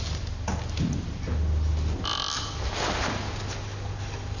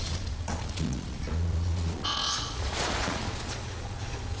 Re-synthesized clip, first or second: second